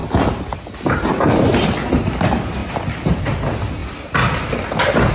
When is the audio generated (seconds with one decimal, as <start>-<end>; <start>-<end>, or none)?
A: none

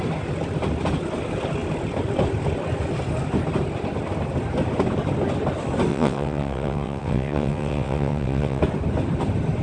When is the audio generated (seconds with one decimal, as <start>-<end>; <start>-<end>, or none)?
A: 5.9-8.6